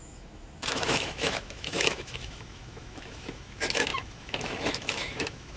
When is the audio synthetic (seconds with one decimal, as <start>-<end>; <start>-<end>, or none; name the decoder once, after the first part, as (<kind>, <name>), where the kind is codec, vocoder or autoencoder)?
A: 0.0-5.6 (autoencoder, DAC-VAE)